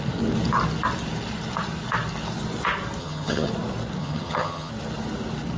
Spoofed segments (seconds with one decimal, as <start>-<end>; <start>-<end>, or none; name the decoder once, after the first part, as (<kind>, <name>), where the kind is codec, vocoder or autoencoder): 3.0-3.5 (vocoder, HiFi-GAN); 4.0-4.7